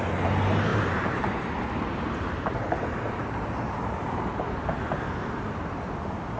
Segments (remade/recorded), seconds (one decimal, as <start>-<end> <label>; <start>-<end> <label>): 0.0-0.7 recorded; 0.7-4.5 remade; 4.5-6.4 recorded